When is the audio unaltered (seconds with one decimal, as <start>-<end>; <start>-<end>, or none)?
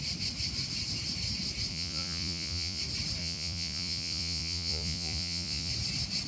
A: 0.0-1.7; 2.8-3.2; 5.7-6.3